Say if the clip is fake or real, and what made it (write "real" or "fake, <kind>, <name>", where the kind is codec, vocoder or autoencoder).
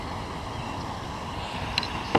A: real